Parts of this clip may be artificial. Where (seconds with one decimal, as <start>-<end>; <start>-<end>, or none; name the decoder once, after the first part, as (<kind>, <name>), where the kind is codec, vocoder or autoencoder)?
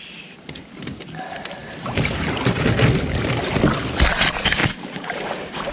4.6-5.7 (vocoder, BigVGAN v2)